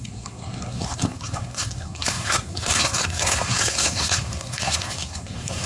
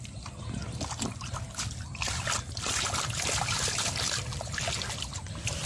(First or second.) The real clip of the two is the second